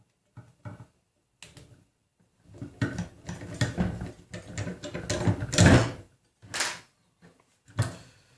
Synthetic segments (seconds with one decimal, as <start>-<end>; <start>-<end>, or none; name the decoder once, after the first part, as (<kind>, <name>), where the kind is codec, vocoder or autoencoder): none